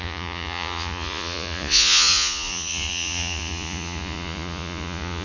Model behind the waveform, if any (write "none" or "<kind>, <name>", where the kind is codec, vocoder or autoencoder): vocoder, Vocos